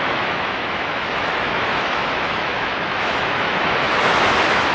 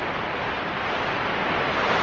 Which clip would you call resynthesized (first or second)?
first